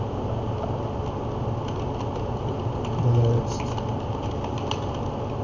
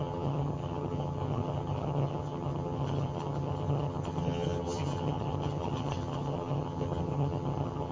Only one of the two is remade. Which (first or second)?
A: second